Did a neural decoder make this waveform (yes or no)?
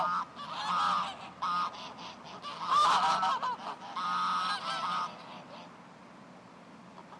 no